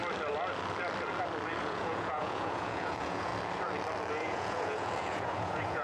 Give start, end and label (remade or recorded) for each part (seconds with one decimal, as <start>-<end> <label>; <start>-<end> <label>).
0.0-1.6 recorded; 1.6-3.3 remade; 3.3-4.1 recorded; 4.1-5.8 remade